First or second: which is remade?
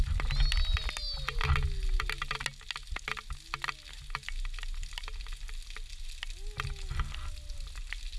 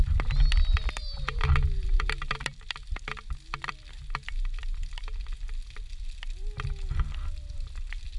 second